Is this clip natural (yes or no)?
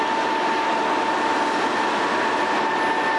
yes